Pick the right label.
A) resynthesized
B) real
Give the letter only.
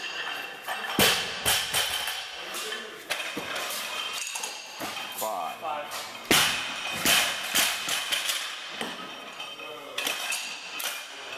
B